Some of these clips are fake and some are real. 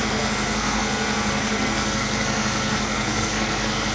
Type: fake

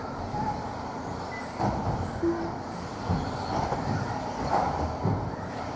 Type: real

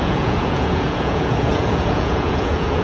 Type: fake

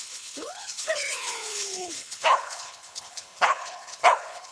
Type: fake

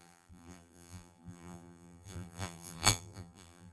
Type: fake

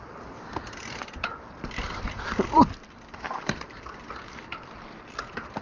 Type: fake